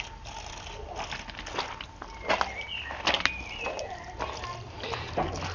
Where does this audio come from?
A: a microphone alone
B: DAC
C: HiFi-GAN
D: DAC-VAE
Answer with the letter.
A